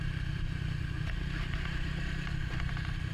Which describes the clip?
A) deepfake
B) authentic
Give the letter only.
A